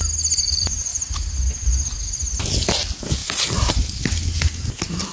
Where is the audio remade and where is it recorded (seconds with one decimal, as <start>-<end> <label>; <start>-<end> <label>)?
0.0-3.2 recorded; 3.2-4.0 remade; 4.0-5.1 recorded